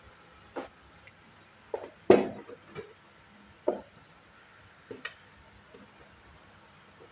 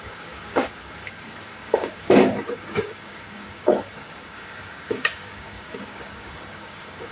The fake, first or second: second